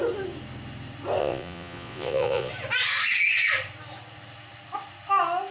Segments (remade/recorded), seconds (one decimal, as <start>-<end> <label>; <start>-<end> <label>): 0.0-1.2 recorded; 1.2-2.5 remade; 2.5-5.5 recorded